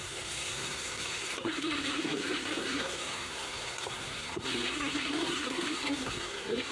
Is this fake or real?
fake